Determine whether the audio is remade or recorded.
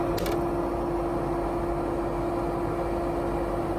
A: recorded